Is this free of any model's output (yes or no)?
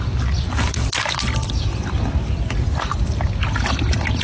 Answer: yes